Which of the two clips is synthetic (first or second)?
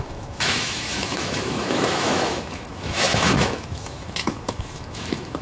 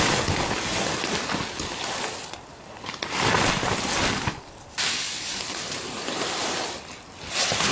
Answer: first